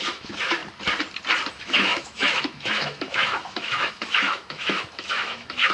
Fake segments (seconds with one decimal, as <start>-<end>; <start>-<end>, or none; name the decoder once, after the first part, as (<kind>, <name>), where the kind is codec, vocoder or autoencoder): 0.0-0.6 (autoencoder, DAC-VAE); 1.5-5.7